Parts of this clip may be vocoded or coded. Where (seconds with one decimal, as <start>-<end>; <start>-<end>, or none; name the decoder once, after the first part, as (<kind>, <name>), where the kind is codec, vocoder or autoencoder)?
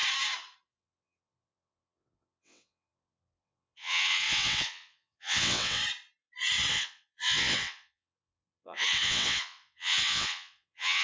0.8-5.8 (vocoder, WaveNeXt); 6.7-11.0